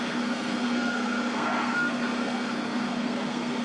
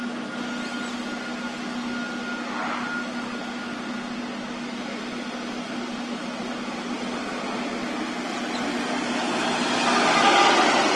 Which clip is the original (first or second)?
second